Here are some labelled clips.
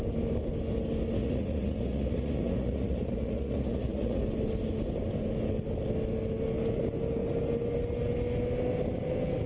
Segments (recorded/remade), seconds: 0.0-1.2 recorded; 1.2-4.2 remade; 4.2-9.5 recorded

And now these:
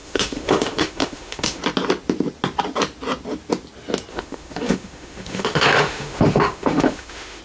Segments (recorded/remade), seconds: 0.0-1.6 remade; 1.6-4.1 recorded; 4.1-7.4 remade

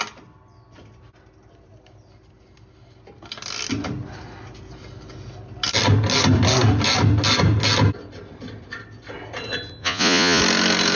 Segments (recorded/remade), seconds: 0.0-9.8 recorded; 9.8-10.4 remade; 10.4-10.9 recorded